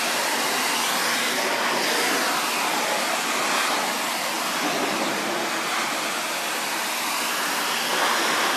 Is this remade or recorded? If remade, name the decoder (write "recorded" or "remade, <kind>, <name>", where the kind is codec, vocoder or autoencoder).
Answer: recorded